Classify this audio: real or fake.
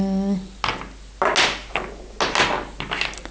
real